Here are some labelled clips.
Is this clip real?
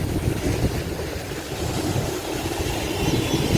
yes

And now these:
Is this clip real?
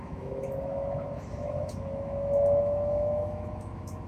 no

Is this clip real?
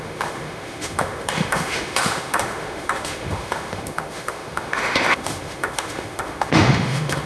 no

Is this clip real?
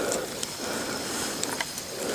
yes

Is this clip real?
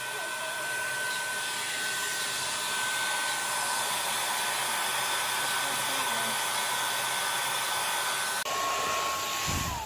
yes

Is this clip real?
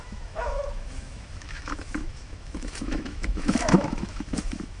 no